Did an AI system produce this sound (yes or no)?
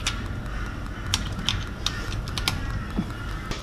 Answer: no